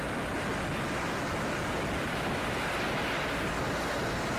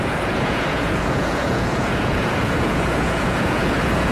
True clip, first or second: first